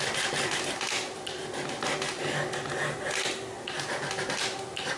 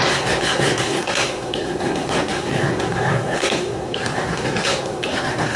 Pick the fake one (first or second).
second